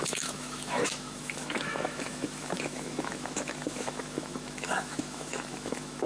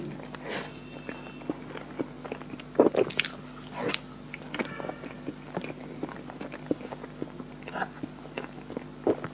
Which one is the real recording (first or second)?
second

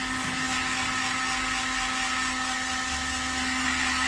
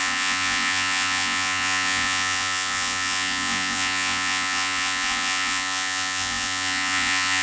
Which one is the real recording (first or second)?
first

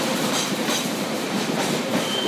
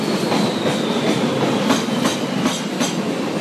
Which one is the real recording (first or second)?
second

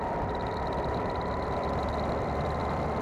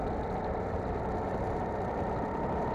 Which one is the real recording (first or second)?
second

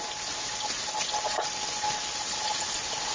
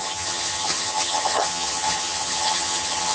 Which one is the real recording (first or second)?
first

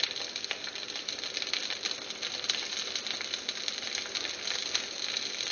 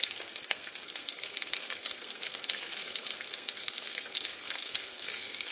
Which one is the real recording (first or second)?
first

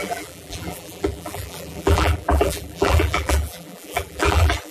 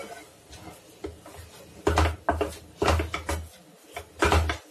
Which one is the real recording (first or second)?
second